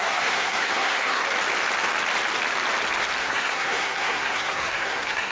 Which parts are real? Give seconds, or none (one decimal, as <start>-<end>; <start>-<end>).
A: 1.2-3.2